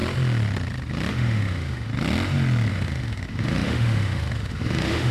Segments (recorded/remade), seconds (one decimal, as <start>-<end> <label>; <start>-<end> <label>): 0.0-1.1 recorded; 1.1-1.9 remade; 1.9-2.7 recorded; 2.7-5.1 remade